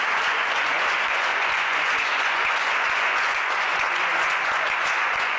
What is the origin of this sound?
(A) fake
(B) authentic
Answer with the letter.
A